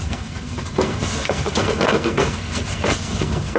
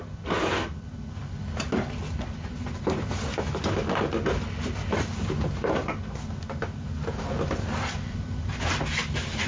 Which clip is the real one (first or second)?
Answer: second